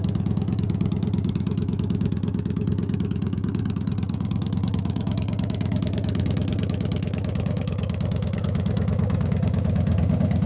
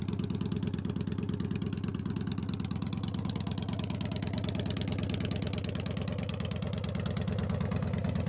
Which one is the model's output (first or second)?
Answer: first